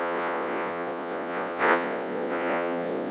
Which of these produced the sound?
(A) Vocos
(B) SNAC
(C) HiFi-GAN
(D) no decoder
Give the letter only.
A